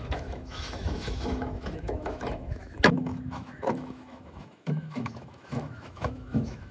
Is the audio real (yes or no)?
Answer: no